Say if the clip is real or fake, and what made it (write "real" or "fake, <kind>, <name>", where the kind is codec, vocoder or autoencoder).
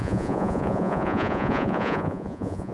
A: fake, vocoder, Vocos